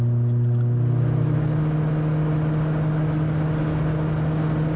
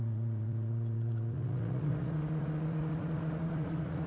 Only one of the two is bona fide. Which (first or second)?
first